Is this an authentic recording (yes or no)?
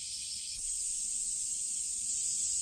no